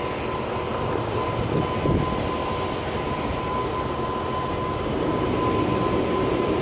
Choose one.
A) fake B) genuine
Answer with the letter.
B